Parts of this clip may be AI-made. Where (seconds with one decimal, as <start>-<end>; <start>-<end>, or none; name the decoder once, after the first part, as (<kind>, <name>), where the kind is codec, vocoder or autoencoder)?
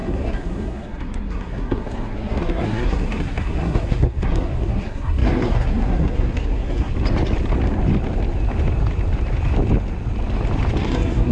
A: 0.0-6.9 (codec, SNAC); 10.8-11.3